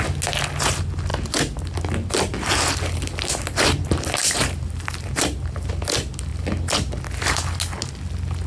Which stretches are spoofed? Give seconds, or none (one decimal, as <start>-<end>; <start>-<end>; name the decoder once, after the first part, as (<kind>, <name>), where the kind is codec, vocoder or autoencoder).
4.2-5.7 (vocoder, BigVGAN v2)